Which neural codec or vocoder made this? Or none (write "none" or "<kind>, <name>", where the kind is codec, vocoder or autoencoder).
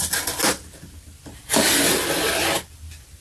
none